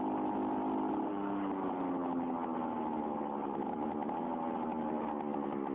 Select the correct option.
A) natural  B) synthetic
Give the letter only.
A